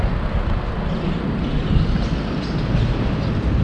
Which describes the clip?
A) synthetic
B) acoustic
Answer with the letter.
B